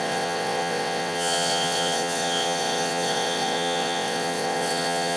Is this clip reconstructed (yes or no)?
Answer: yes